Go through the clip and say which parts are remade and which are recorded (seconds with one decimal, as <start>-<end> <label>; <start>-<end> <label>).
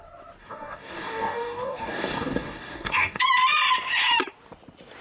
0.0-0.4 recorded; 0.4-3.2 remade; 3.2-5.0 recorded